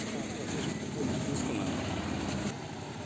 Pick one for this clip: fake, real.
real